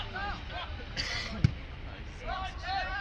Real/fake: real